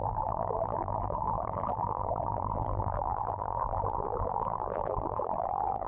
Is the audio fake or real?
fake